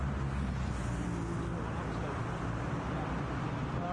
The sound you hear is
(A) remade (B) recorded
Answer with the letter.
B